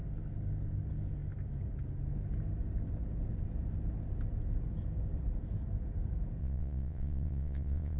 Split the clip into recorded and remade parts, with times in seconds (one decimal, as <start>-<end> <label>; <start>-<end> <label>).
0.0-6.4 recorded; 6.4-8.0 remade